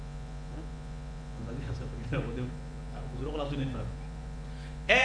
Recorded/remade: remade